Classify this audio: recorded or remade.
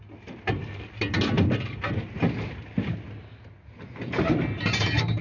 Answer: recorded